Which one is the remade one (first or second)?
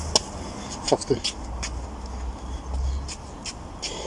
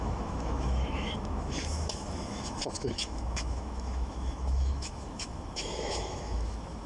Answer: second